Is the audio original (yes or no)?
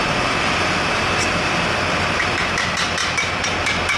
no